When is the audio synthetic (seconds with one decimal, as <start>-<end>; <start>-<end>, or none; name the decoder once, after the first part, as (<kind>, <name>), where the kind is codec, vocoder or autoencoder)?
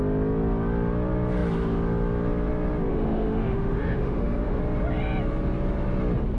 2.9-4.6 (autoencoder, DAC-VAE)